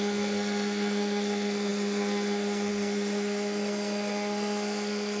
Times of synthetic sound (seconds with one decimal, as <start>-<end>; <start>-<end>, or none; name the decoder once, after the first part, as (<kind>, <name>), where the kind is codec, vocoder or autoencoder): 0.0-5.2 (codec, SNAC)